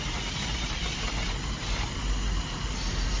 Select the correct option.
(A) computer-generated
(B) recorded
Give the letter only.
B